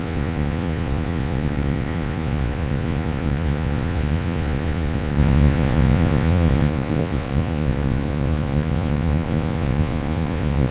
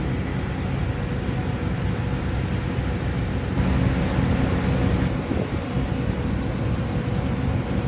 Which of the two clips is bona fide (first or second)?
second